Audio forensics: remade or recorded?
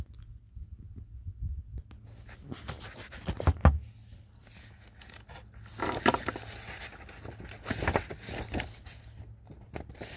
recorded